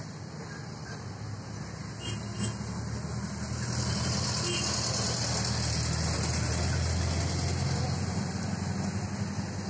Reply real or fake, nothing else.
real